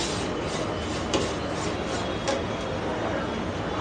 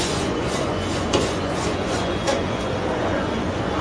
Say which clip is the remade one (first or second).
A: second